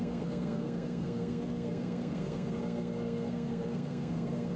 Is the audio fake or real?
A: fake